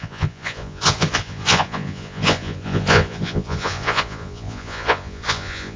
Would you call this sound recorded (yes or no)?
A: no